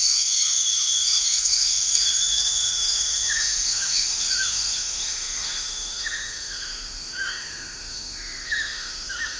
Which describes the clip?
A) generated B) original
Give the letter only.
A